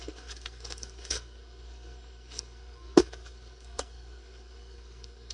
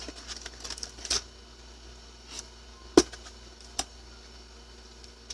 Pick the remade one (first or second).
first